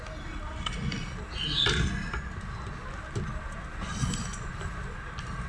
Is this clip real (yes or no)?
yes